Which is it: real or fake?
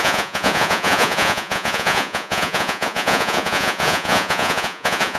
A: fake